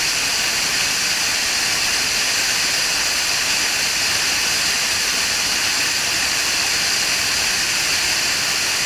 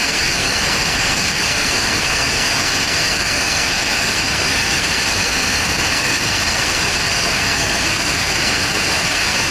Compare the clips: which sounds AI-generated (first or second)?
second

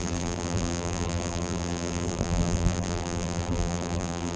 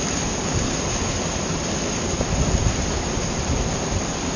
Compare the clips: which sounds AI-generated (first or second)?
first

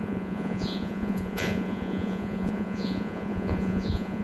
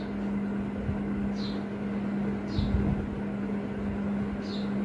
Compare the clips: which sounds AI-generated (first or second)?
first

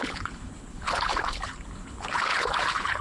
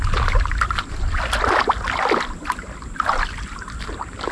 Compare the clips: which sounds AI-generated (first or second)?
first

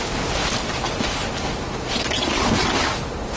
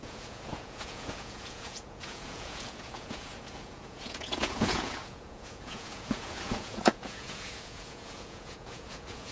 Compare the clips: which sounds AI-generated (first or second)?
second